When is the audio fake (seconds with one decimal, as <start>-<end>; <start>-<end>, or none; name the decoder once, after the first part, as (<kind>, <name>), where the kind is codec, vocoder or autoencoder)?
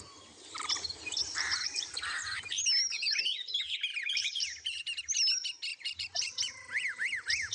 1.2-2.4 (vocoder, BigVGAN v2); 3.9-4.8; 5.7-6.5